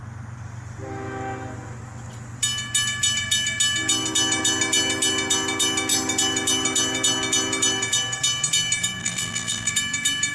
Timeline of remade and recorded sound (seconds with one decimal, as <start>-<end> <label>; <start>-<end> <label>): 0.0-9.0 recorded; 9.0-9.7 remade; 9.7-10.3 recorded